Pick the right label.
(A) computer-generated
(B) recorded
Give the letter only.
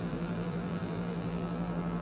A